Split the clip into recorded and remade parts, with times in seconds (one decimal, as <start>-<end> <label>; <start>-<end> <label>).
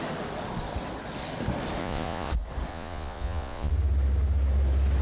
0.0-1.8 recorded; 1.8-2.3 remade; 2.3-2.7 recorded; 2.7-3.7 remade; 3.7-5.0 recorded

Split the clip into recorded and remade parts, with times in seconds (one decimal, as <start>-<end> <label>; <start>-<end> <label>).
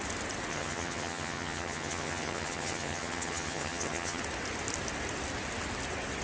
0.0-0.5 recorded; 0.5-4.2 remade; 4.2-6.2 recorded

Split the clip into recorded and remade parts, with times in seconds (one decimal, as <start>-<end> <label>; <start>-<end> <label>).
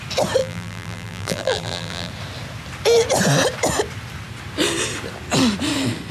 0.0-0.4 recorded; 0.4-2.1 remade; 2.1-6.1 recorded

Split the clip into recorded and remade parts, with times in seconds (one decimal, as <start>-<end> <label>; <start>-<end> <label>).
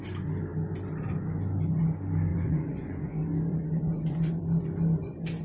0.0-2.3 recorded; 2.3-3.1 remade; 3.1-3.5 recorded; 3.5-4.4 remade; 4.4-5.4 recorded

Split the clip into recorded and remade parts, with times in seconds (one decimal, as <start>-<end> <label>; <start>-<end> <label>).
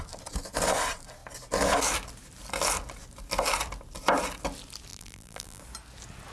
0.0-4.9 recorded; 4.9-5.6 remade; 5.6-6.3 recorded